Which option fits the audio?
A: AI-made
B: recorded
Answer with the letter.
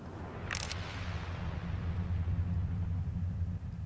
B